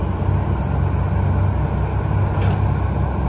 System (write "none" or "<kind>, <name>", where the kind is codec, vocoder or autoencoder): none